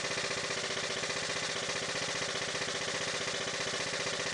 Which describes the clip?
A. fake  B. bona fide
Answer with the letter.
B